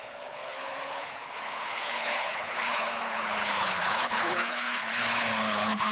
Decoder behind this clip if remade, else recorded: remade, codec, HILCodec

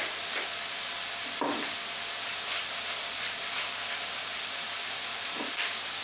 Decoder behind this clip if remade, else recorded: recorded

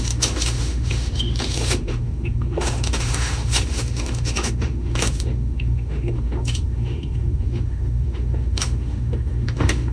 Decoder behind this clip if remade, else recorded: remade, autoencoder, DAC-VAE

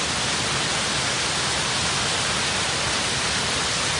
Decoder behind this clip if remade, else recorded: recorded